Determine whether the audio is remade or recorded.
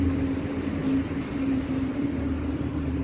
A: recorded